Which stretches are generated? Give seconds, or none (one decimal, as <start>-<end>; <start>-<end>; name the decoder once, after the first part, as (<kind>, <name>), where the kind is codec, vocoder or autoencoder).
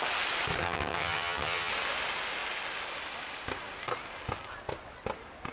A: 0.6-1.7 (vocoder, HiFi-GAN)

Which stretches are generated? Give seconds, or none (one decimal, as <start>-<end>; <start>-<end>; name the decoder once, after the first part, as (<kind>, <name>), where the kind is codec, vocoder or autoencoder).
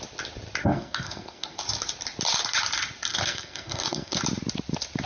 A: 0.6-1.6 (codec, SNAC); 3.1-4.2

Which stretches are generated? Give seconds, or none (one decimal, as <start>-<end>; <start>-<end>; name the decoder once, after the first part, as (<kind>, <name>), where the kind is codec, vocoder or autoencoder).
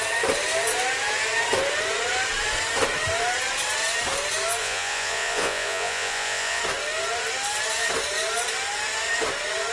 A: 4.6-6.6 (vocoder, Vocos)